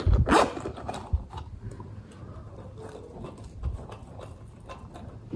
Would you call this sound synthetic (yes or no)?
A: no